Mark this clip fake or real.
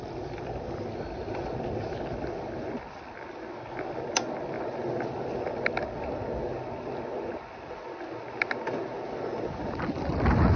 real